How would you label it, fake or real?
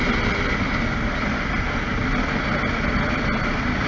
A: real